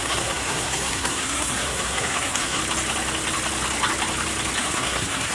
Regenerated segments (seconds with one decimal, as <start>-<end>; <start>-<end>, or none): 0.0-2.6; 4.6-5.3